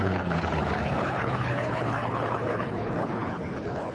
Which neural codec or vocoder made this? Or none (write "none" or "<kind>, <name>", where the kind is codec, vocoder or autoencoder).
codec, HILCodec